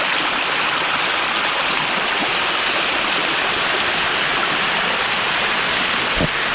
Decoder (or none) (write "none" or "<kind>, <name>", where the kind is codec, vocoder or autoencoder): none